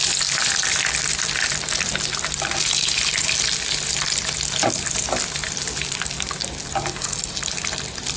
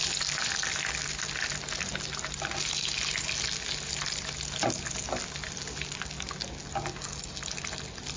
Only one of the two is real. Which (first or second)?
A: second